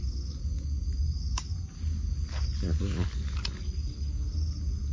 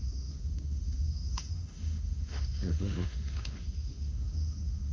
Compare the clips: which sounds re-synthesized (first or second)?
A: second